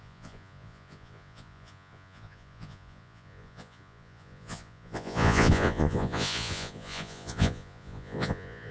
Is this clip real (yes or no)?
no